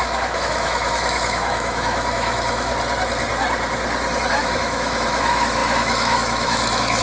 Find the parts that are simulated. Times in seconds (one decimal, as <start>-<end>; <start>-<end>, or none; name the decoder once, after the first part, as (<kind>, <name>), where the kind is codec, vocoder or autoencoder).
0.0-2.7 (autoencoder, DAC-VAE); 4.3-7.0

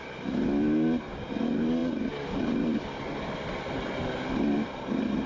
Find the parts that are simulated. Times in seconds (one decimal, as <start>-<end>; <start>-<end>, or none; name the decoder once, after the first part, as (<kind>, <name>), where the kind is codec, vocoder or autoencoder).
none

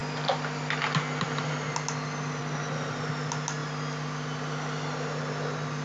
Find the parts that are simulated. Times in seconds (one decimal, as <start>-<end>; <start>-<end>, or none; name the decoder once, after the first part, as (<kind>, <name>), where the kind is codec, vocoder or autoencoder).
none